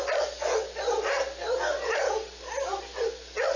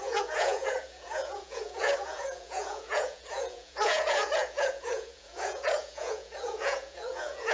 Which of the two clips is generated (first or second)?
second